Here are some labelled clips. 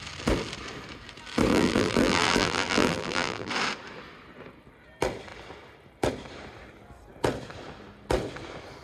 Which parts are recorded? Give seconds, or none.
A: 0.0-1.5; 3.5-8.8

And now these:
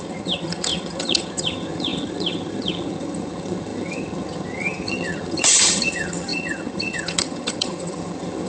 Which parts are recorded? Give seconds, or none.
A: none

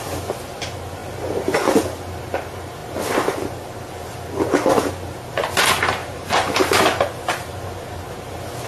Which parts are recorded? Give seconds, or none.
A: 0.0-6.0; 7.5-8.7